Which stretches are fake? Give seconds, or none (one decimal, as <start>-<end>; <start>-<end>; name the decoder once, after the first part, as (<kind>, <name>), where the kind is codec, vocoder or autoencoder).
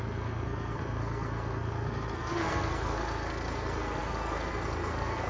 0.0-5.3 (codec, SNAC)